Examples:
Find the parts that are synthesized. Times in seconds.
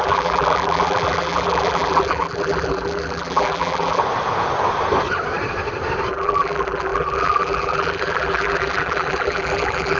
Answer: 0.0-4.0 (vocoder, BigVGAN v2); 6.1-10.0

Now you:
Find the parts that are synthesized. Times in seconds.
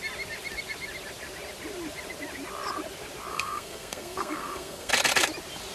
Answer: 3.3-4.9 (codec, SNAC)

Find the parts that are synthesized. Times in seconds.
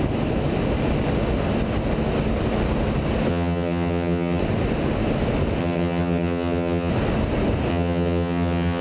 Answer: 3.3-4.4 (vocoder, HiFi-GAN); 5.6-6.9; 7.7-8.8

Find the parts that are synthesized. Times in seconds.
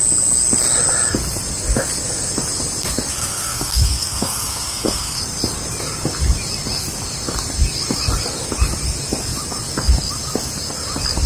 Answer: 3.1-5.2 (codec, SNAC)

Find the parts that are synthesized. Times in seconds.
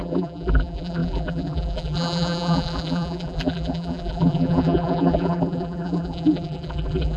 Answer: 0.0-7.2 (vocoder, BigVGAN v2)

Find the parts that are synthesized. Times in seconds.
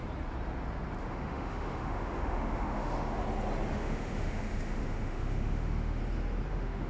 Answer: 1.0-3.2 (autoencoder, DAC-VAE); 3.7-6.0; 6.5-6.9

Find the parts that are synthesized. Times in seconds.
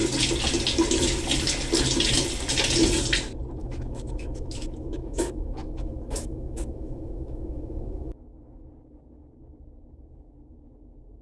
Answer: 3.6-8.6 (autoencoder, DAC-VAE)